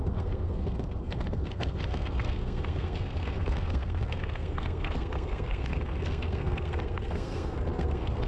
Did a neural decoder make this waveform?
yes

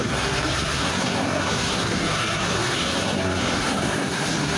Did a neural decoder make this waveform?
yes